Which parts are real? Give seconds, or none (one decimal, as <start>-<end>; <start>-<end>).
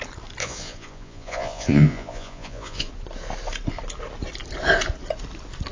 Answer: 0.0-0.4; 2.9-5.7